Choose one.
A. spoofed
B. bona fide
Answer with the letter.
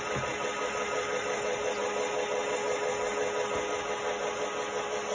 B